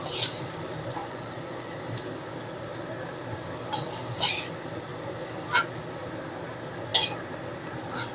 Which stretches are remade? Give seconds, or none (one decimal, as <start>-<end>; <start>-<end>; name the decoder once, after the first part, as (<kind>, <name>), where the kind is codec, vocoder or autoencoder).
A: 1.0-1.8 (vocoder, Vocos)